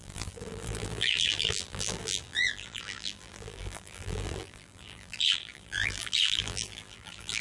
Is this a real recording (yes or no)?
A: no